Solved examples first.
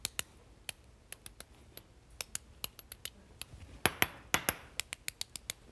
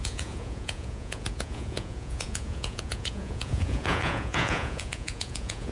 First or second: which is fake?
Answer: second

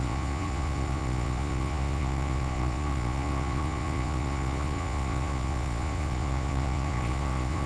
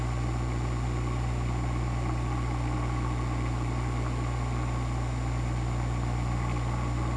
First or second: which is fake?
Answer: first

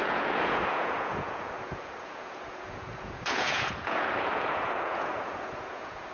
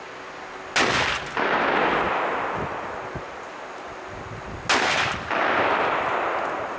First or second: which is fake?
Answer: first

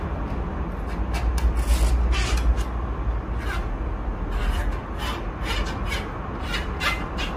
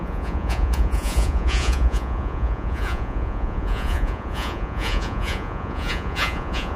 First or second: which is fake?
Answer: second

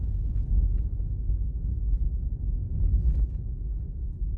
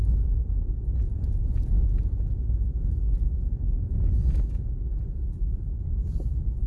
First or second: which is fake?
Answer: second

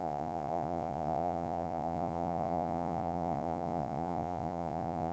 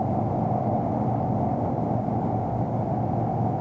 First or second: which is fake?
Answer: first